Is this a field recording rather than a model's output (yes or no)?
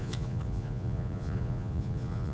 no